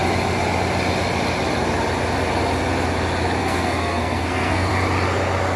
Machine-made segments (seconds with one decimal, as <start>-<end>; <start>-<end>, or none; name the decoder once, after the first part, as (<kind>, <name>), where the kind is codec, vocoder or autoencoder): 3.4-4.7 (codec, SNAC)

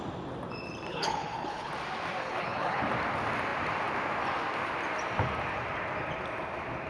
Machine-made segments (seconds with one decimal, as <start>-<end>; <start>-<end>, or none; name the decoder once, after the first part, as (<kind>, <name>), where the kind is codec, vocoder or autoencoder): 0.9-1.7 (codec, HILCodec); 2.2-2.8

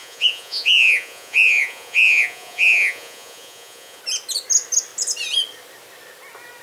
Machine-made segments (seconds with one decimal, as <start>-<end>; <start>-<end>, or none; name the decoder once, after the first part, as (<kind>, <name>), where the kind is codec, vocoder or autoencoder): 0.0-4.0 (vocoder, Vocos)